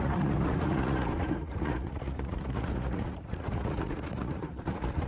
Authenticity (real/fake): fake